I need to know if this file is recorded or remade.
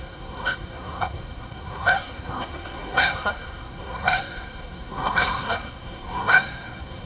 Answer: remade